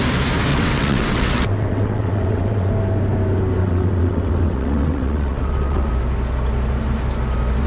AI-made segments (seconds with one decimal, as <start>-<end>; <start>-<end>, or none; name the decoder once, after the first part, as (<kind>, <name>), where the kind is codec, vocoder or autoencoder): 0.5-2.7 (vocoder, WaveNeXt); 3.6-5.9